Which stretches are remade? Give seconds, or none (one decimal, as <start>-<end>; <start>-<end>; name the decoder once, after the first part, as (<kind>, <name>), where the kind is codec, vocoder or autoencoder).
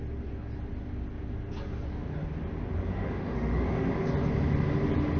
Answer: 2.9-3.9 (autoencoder, DAC-VAE)